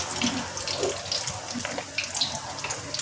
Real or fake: real